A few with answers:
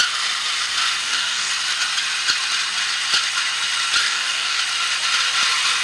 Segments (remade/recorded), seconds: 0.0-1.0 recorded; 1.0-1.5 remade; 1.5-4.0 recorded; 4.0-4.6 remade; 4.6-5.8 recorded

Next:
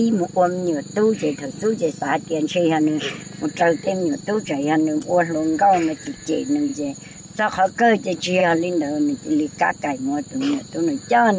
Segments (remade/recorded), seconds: 0.0-2.1 recorded; 2.1-2.8 remade; 2.8-3.6 recorded; 3.6-4.2 remade; 4.2-6.7 recorded; 6.7-7.5 remade; 7.5-8.4 recorded; 8.4-9.7 remade; 9.7-11.4 recorded

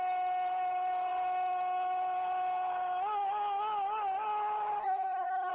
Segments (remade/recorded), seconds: 0.0-4.8 recorded; 4.8-5.5 remade

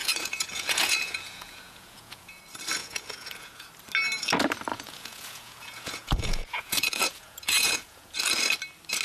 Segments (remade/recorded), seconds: 0.0-2.4 remade; 2.4-2.8 recorded; 2.8-3.7 remade; 3.7-4.7 recorded; 4.7-8.2 remade; 8.2-9.0 recorded

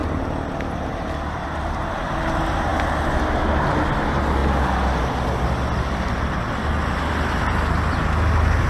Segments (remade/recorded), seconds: 0.0-8.7 recorded

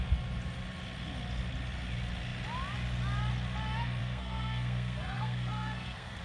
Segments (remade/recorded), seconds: 0.0-4.0 recorded; 4.0-6.2 remade

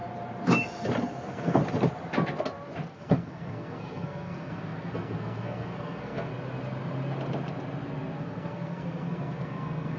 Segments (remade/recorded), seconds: 0.0-1.1 recorded; 1.1-1.6 remade; 1.6-2.9 recorded; 2.9-6.3 remade; 6.3-8.2 recorded; 8.2-10.0 remade

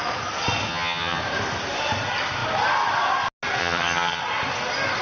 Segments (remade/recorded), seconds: 0.0-0.7 recorded; 0.7-1.2 remade; 1.2-3.6 recorded; 3.6-4.2 remade; 4.2-5.0 recorded